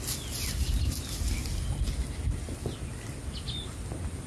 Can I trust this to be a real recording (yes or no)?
yes